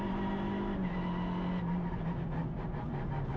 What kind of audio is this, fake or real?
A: real